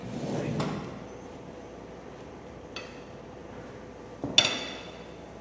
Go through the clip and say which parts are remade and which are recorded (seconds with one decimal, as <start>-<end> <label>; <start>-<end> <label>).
0.0-5.4 recorded